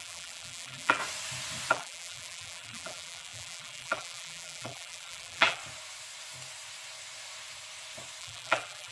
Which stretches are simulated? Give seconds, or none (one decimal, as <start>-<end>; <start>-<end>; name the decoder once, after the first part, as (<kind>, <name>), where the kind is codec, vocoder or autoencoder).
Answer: 0.0-1.0 (vocoder, BigVGAN v2); 1.7-5.6; 8.2-8.9